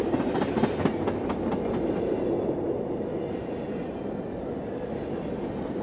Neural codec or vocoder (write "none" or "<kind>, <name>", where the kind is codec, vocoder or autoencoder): none